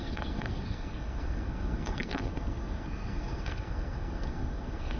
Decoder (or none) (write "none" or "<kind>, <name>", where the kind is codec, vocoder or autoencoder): codec, SNAC